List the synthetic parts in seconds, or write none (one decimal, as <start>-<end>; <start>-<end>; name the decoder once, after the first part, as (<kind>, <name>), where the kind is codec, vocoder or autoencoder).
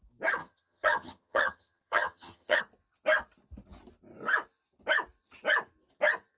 0.4-2.6 (vocoder, HiFi-GAN)